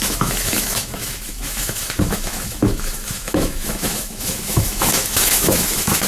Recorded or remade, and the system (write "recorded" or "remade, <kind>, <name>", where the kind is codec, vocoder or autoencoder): remade, autoencoder, DAC-VAE